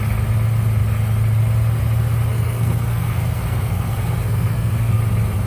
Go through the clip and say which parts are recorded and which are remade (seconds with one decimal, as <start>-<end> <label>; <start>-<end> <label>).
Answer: 0.0-2.3 recorded; 2.3-5.0 remade; 5.0-5.5 recorded